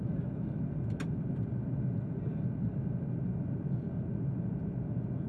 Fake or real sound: real